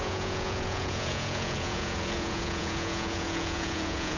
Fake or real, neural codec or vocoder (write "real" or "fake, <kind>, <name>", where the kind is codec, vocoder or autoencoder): fake, vocoder, Vocos